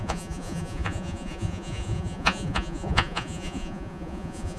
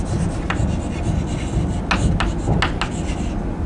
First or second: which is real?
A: second